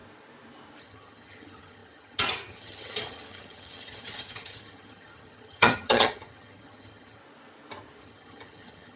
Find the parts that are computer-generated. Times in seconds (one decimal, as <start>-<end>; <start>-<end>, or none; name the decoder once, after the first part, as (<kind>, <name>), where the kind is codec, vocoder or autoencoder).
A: 0.8-7.2 (vocoder, HiFi-GAN); 8.0-9.0